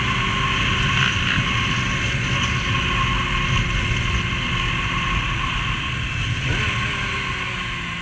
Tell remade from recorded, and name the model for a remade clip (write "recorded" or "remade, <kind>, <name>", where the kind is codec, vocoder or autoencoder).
recorded